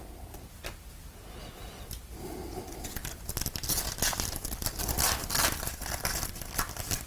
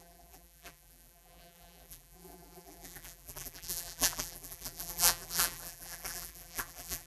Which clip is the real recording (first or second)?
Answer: first